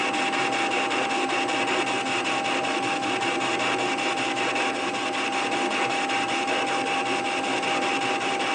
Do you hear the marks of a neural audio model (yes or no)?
no